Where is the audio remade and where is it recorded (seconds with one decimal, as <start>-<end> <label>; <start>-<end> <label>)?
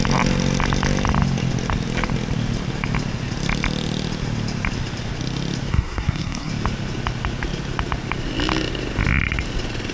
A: 0.0-5.7 recorded; 5.7-6.5 remade; 6.5-9.9 recorded